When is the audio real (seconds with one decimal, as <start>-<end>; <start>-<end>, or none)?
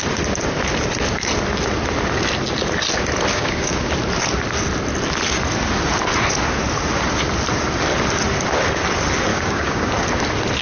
0.0-3.3; 3.9-9.3; 9.9-10.6